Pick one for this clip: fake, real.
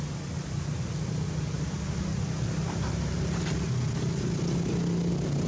real